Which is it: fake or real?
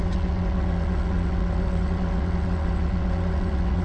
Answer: fake